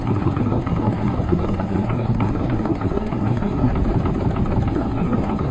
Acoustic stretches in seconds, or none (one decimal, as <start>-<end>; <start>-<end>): 3.7-4.7